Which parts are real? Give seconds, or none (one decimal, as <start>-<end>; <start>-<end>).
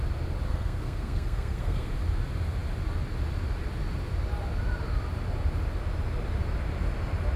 0.0-0.5; 1.9-7.4